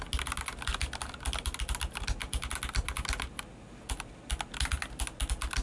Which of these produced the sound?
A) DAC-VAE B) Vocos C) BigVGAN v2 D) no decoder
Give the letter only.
D